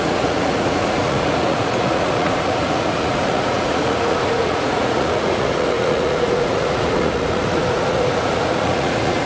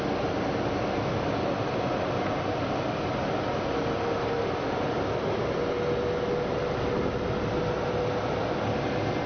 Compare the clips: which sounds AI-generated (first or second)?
first